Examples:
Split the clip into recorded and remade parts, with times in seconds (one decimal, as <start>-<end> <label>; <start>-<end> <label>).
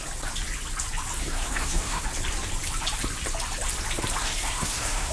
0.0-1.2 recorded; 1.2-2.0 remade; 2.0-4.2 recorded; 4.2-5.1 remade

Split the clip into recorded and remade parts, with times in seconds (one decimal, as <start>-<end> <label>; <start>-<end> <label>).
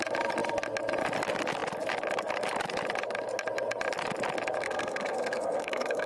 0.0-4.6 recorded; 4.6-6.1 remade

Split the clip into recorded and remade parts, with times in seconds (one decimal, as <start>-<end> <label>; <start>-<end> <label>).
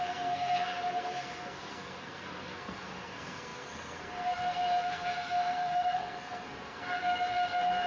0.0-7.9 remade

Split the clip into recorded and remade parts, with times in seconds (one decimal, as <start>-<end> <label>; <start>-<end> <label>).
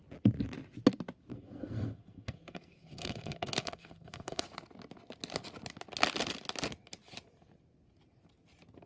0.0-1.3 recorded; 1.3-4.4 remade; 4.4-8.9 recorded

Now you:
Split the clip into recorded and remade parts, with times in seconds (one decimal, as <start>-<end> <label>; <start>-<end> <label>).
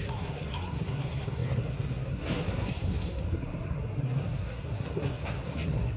0.0-6.0 remade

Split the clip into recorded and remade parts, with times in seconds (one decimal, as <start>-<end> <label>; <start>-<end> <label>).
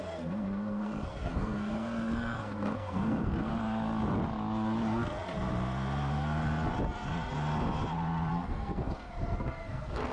0.0-3.5 remade; 3.5-8.3 recorded; 8.3-10.1 remade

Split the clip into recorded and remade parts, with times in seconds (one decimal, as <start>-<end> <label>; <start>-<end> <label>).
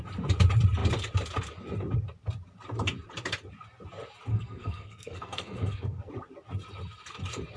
0.0-4.3 recorded; 4.3-6.1 remade; 6.1-7.6 recorded